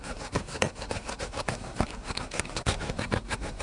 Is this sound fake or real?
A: fake